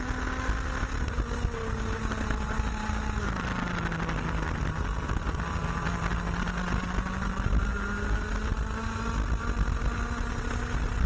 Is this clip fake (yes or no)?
no